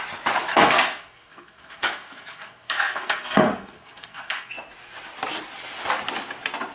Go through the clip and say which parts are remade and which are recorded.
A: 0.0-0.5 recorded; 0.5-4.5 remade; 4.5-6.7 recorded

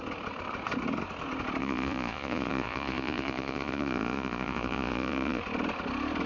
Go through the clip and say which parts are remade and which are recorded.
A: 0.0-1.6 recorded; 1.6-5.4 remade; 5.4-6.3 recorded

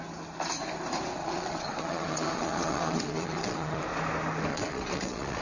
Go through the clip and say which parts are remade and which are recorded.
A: 0.0-1.2 recorded; 1.2-3.8 remade; 3.8-4.5 recorded; 4.5-5.4 remade